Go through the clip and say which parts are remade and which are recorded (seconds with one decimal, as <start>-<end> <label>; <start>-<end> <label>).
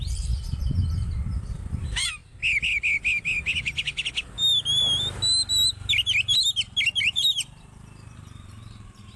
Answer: 0.0-2.2 remade; 2.2-7.0 recorded; 7.0-9.2 remade